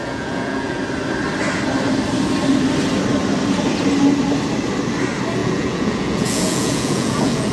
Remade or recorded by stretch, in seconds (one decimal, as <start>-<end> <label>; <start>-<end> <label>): 0.0-0.8 remade; 0.8-5.4 recorded; 5.4-7.5 remade